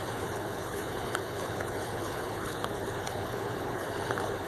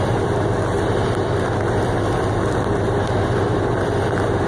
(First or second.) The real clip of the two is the second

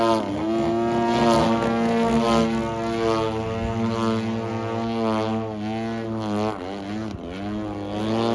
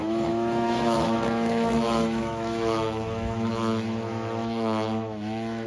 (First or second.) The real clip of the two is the first